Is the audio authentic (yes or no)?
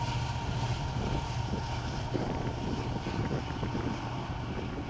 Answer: yes